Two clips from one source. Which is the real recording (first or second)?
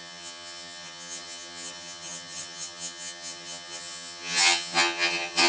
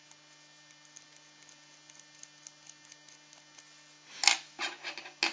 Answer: second